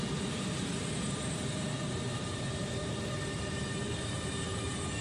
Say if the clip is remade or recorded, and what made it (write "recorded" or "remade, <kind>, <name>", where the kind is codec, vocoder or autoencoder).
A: remade, vocoder, BigVGAN v2